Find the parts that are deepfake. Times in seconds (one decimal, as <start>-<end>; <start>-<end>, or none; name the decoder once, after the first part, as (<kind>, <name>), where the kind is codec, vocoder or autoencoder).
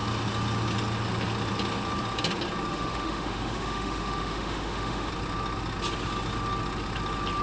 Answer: 2.7-5.1 (autoencoder, DAC-VAE)